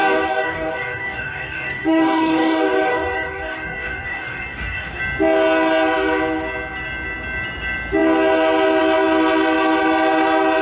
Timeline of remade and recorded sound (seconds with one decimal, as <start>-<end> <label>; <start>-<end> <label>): 0.0-5.0 remade; 5.0-10.6 recorded